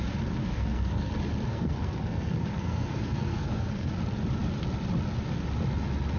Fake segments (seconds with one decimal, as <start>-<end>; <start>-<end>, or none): 0.4-1.1; 1.5-3.9